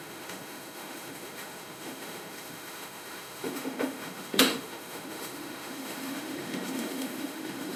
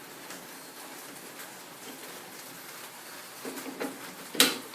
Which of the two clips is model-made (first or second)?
first